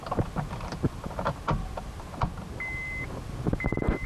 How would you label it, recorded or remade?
recorded